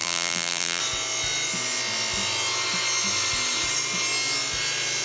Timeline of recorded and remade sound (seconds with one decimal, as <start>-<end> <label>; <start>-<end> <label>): 0.0-0.8 remade; 0.8-5.0 recorded